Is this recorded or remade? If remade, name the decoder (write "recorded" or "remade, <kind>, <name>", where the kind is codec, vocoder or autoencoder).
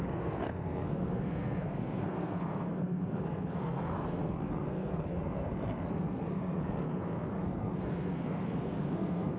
remade, codec, SNAC